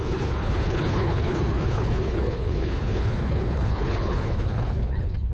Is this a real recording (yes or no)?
no